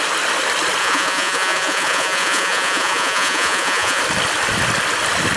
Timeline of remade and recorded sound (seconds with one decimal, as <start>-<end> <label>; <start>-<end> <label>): 0.0-0.8 recorded; 0.8-4.0 remade; 4.0-5.4 recorded